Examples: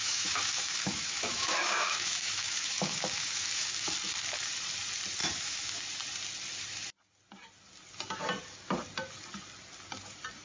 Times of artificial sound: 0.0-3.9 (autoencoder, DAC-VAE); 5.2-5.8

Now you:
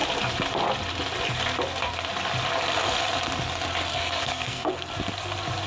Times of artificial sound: 3.9-4.9 (codec, SNAC)